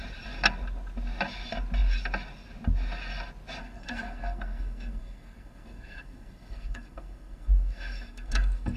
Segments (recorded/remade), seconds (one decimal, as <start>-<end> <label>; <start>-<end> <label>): 0.0-3.6 recorded; 3.6-8.8 remade